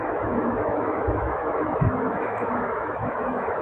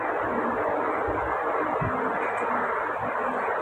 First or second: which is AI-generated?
first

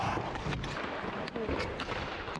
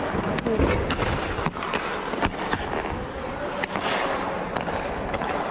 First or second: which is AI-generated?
first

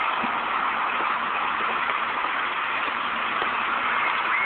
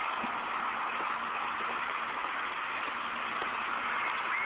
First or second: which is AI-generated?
first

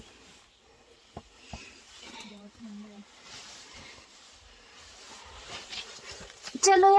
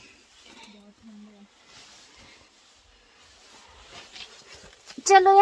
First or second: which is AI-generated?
first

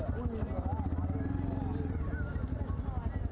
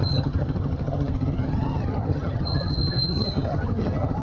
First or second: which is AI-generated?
second